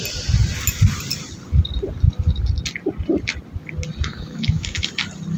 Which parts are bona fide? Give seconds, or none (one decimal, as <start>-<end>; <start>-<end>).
0.0-4.1; 4.9-5.4